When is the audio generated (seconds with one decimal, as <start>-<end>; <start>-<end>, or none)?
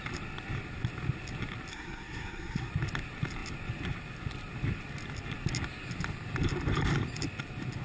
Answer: 1.7-2.7